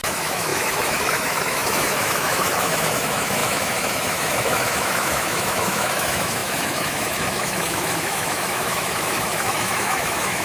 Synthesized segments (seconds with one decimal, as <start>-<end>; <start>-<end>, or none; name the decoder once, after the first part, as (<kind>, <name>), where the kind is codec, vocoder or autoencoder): 0.0-10.4 (autoencoder, DAC-VAE)